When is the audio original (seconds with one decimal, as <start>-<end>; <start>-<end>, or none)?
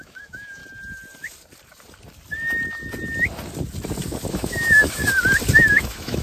0.6-4.3; 5.0-5.7